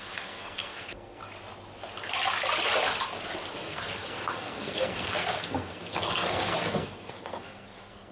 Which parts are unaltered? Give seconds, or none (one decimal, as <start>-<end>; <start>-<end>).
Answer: 1.2-3.5